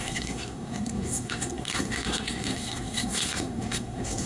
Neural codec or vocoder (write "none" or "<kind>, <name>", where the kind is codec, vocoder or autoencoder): codec, SNAC